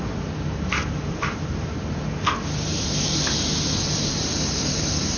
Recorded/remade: remade